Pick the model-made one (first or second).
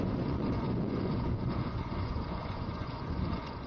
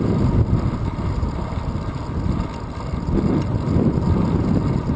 first